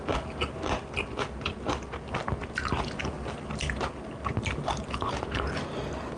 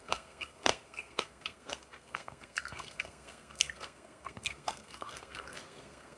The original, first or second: first